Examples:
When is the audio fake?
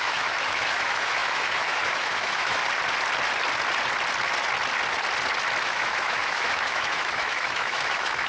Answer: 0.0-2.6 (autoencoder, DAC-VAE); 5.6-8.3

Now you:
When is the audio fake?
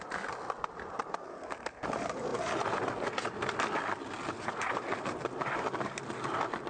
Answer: none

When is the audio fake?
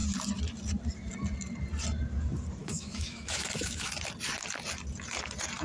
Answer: 2.6-3.9 (autoencoder, DAC-VAE)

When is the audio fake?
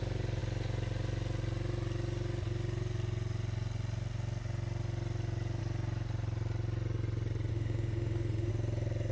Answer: 7.5-8.5 (autoencoder, DAC-VAE)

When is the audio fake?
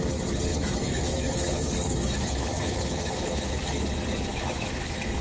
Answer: 0.5-3.6 (autoencoder, DAC-VAE); 4.3-5.2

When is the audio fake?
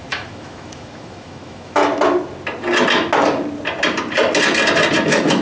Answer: 0.0-1.8 (autoencoder, DAC-VAE); 5.0-5.4